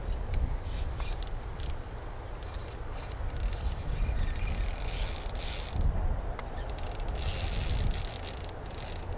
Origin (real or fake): real